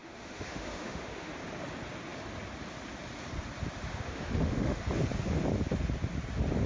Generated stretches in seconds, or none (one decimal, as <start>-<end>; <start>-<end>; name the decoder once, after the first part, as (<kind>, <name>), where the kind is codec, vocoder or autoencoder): 0.0-1.3 (autoencoder, DAC-VAE); 3.9-4.8